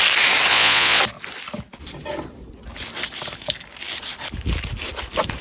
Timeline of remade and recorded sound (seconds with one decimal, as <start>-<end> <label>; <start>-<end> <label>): 0.0-0.5 recorded; 0.5-1.0 remade; 1.0-5.4 recorded